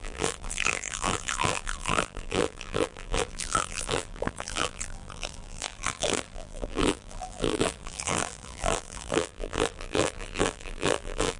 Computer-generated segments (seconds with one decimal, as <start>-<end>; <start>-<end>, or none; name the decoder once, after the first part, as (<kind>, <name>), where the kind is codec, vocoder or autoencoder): 0.0-11.4 (vocoder, BigVGAN v2)